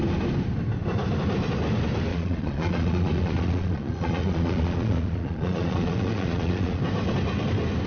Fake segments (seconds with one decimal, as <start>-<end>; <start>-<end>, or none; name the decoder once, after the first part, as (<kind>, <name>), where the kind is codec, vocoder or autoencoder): 2.1-6.8 (vocoder, Vocos)